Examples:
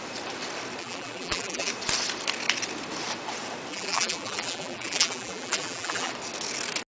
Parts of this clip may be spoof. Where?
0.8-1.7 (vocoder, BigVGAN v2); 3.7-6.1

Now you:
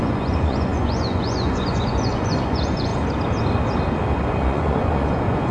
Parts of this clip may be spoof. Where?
0.0-2.9 (vocoder, Vocos); 4.2-5.5

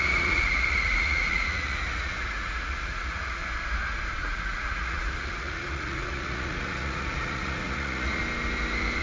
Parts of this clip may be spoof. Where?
0.0-3.4 (vocoder, Vocos); 4.2-8.2

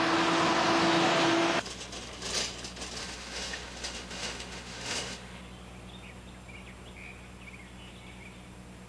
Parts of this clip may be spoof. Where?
3.0-5.4 (autoencoder, DAC-VAE)

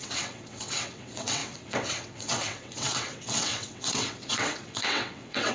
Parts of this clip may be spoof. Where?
0.0-5.5 (vocoder, WaveNeXt)